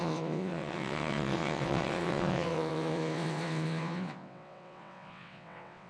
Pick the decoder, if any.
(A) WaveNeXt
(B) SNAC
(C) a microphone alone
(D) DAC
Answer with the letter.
A